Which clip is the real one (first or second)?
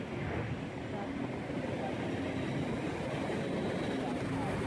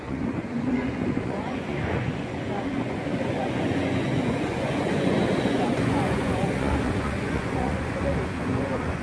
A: first